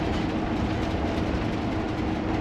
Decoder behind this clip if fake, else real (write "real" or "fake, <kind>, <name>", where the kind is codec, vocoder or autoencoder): real